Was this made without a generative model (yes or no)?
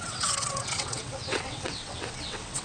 no